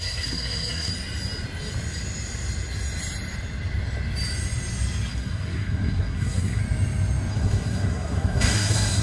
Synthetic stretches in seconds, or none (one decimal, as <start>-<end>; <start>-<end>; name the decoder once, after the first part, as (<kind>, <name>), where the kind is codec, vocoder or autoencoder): 0.0-0.9 (codec, SNAC); 5.1-6.6; 7.3-9.0